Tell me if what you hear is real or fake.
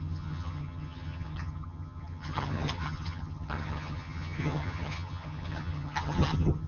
fake